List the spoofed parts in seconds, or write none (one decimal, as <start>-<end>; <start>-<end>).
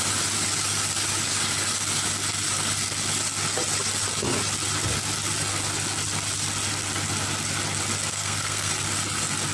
8.1-8.7